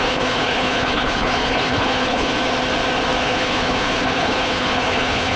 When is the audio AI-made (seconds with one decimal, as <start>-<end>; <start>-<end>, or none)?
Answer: 0.0-2.3; 3.2-5.4